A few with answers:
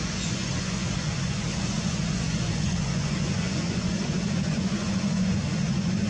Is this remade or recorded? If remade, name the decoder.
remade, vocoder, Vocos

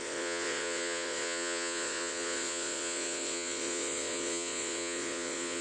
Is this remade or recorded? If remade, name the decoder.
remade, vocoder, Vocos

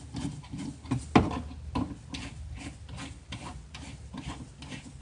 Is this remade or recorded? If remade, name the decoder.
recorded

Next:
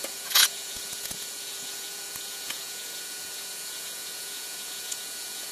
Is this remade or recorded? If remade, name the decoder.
remade, vocoder, Vocos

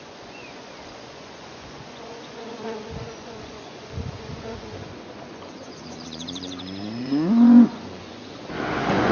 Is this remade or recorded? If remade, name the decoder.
remade, vocoder, Vocos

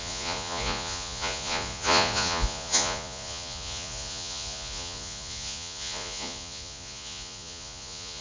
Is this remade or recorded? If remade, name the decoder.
remade, vocoder, Vocos